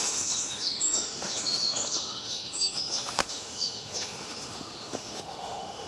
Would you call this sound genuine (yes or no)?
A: no